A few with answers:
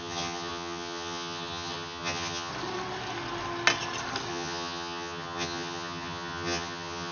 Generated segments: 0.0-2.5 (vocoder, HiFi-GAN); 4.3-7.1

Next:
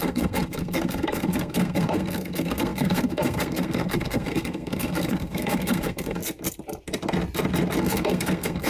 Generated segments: 0.0-6.2 (codec, SNAC); 7.8-8.7